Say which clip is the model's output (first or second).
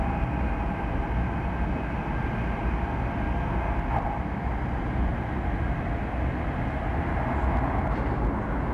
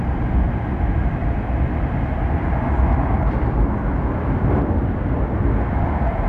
second